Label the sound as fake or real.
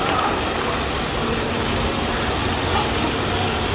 real